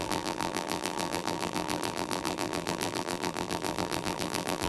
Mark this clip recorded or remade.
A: remade